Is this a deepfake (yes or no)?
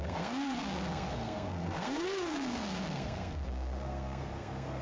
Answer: yes